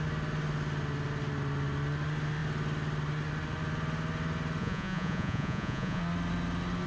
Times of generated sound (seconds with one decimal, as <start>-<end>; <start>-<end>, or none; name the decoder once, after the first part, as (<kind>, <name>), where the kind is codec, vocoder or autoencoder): 4.6-6.0 (vocoder, Vocos)